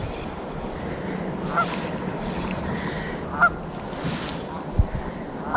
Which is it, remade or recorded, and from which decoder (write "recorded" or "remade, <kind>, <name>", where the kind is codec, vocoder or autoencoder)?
recorded